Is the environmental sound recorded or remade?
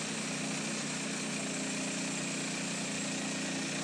recorded